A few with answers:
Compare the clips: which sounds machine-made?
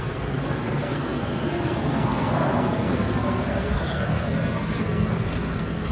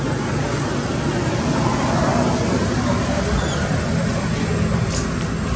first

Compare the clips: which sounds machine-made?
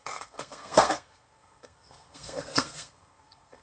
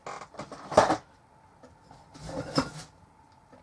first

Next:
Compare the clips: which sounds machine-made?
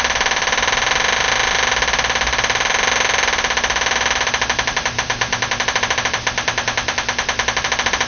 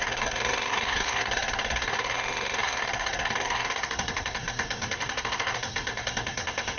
second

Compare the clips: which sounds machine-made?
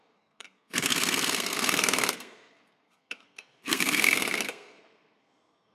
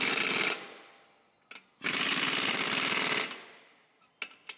first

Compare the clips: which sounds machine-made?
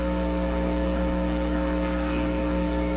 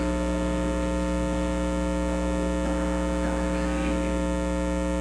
first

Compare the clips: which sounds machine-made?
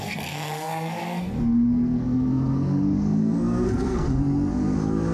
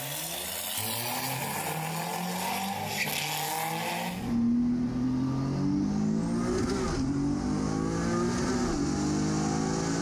first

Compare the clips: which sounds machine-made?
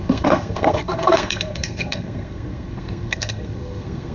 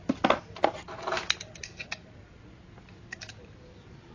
first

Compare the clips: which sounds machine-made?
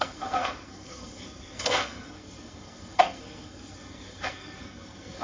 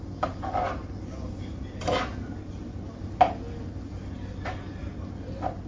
first